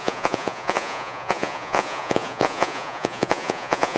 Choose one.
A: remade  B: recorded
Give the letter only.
A